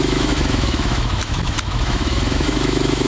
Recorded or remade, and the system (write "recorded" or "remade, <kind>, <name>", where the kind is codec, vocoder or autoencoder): remade, autoencoder, DAC-VAE